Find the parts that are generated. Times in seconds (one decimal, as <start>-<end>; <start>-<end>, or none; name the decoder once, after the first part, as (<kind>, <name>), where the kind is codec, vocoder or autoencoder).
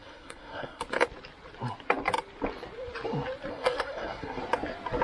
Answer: 0.0-0.8 (codec, SNAC); 3.5-4.4